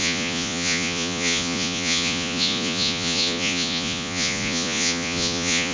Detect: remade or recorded remade